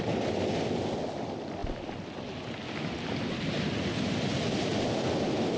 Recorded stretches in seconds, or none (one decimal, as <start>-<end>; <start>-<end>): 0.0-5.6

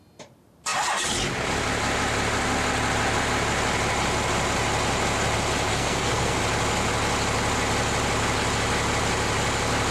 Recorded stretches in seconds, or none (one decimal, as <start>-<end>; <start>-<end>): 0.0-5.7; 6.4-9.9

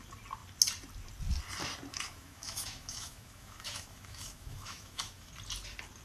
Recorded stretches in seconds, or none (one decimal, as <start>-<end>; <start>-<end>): 0.0-1.9; 5.3-6.0